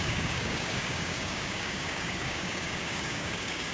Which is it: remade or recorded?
remade